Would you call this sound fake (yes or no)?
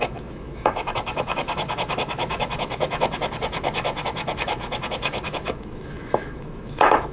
yes